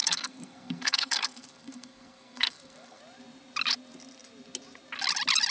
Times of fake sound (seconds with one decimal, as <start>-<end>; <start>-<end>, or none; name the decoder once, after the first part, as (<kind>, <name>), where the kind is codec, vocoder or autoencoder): 0.0-3.0 (codec, SNAC)